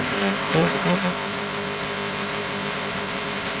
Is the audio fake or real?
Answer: fake